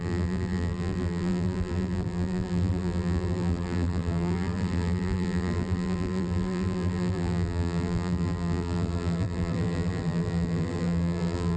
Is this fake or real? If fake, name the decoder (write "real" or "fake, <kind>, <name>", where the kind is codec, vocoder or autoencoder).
fake, vocoder, BigVGAN v2